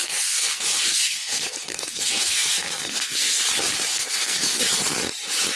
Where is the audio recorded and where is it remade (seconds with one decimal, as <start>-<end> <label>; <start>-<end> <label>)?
0.0-3.4 remade; 3.4-3.9 recorded; 3.9-4.6 remade; 4.6-5.6 recorded